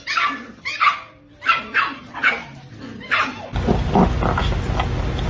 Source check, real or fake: real